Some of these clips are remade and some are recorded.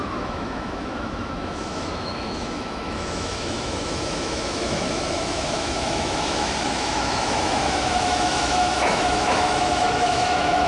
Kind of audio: remade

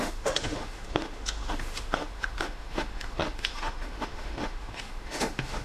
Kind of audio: remade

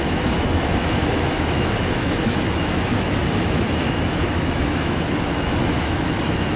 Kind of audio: remade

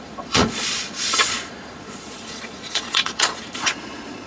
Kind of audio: remade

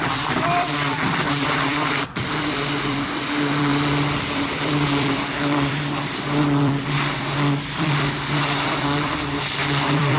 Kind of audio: remade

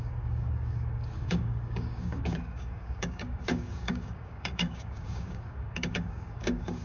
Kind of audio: remade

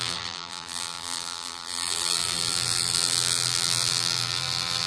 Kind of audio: remade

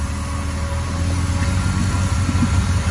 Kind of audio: recorded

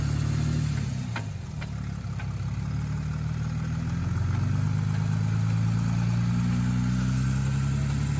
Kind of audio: recorded